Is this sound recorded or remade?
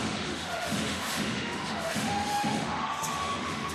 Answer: remade